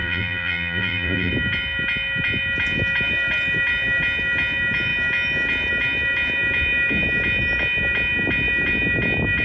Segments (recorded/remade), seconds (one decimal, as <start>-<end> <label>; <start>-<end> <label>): 0.0-1.3 remade; 1.3-9.4 recorded

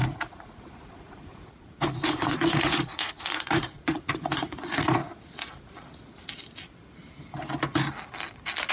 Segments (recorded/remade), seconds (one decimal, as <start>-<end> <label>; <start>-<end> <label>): 0.0-5.0 remade; 5.0-8.7 recorded

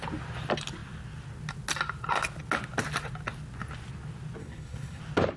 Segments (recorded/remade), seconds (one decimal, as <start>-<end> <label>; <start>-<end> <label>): 0.0-4.4 recorded; 4.4-5.0 remade; 5.0-5.4 recorded